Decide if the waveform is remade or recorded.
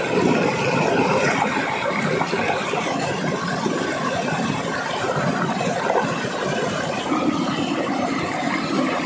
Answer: remade